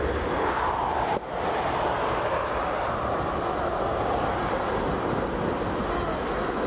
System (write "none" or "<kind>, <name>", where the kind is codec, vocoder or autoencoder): none